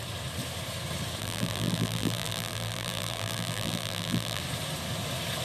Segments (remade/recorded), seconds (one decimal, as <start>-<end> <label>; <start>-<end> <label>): 0.0-1.2 recorded; 1.2-4.4 remade; 4.4-5.4 recorded